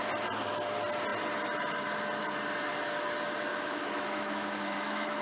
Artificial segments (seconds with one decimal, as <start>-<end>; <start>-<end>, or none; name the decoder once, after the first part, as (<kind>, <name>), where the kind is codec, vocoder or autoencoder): 3.5-5.2 (autoencoder, DAC-VAE)